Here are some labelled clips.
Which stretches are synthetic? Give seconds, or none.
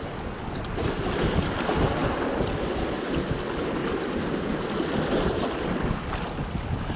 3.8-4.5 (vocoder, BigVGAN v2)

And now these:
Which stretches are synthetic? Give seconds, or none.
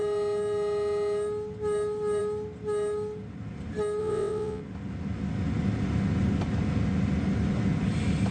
4.0-4.6 (vocoder, WaveNeXt)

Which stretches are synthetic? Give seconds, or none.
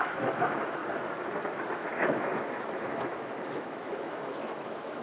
0.0-0.8 (autoencoder, DAC-VAE); 1.6-5.0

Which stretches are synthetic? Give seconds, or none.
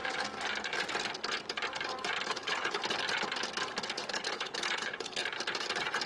2.3-2.8 (codec, HILCodec); 4.1-5.2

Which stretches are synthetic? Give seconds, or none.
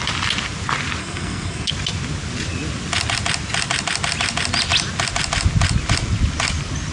1.0-1.7 (codec, SNAC)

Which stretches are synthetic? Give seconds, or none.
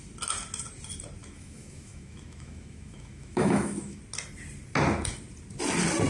1.2-4.0 (autoencoder, DAC-VAE)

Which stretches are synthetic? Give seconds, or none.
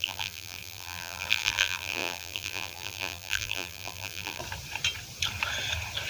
0.0-4.4 (vocoder, BigVGAN v2)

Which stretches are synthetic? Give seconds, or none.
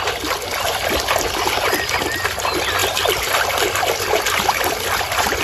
2.8-5.4 (vocoder, BigVGAN v2)